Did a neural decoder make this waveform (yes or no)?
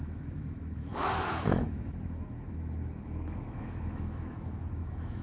yes